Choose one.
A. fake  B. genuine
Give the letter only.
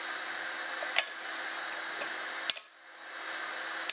B